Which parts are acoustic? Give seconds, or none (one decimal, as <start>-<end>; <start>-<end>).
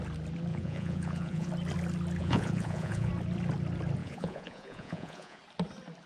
0.0-0.5; 1.5-2.2; 3.1-4.0; 5.4-6.1